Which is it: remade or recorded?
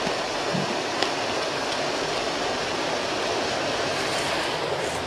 recorded